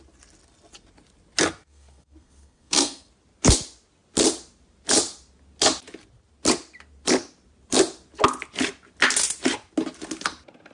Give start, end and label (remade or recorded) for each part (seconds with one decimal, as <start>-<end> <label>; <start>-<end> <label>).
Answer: 0.0-1.6 recorded; 1.6-3.1 remade; 3.1-10.7 recorded